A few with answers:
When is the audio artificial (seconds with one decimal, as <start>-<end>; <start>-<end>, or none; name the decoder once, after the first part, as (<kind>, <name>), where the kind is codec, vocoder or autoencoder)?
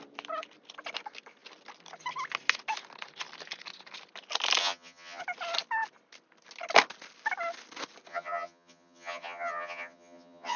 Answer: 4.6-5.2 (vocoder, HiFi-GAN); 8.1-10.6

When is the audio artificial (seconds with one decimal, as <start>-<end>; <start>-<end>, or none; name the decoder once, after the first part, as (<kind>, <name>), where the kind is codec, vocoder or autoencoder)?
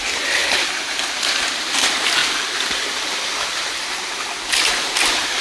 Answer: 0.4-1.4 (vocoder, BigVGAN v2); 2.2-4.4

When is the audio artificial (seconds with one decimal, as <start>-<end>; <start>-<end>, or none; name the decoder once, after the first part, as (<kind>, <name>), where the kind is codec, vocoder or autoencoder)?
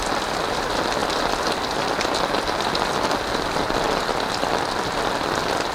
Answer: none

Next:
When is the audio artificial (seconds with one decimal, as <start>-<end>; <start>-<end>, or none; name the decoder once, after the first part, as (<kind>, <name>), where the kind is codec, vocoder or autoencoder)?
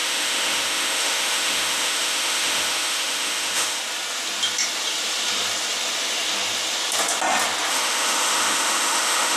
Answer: 0.0-3.8 (autoencoder, DAC-VAE); 7.7-9.4